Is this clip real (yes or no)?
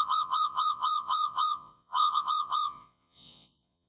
no